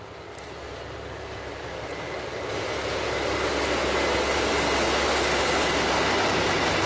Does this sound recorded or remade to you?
recorded